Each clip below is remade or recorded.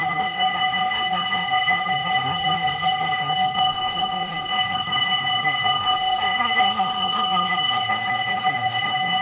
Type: remade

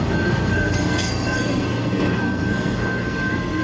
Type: remade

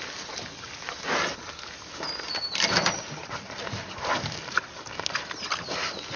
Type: recorded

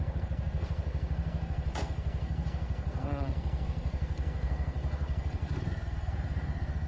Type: remade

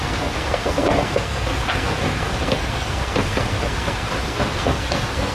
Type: remade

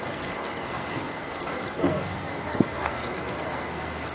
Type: remade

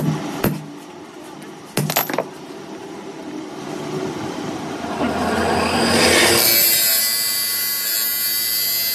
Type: recorded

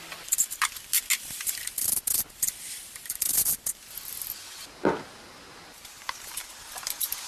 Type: recorded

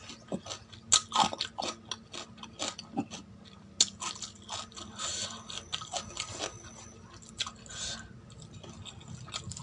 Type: recorded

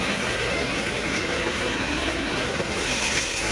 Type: remade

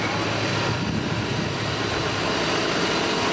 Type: recorded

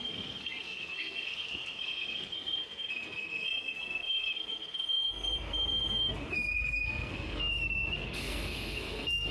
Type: remade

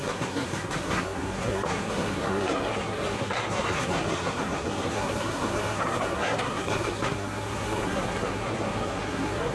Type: remade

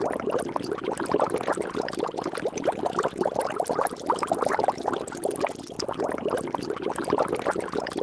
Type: recorded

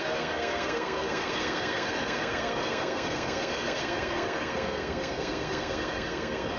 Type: remade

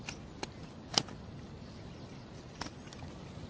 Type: recorded